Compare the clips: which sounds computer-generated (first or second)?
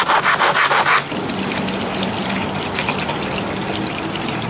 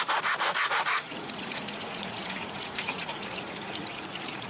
second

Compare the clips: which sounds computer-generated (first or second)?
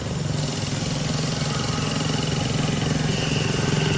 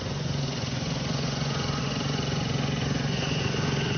second